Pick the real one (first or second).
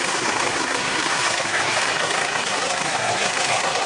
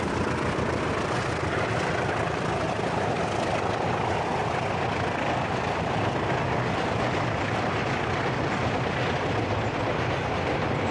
second